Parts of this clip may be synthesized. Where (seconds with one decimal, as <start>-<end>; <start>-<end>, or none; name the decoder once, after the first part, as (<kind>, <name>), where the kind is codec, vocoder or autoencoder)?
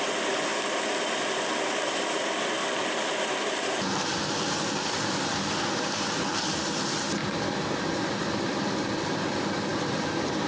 0.0-0.5 (vocoder, BigVGAN v2); 1.6-10.5